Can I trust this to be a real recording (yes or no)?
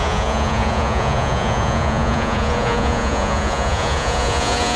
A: no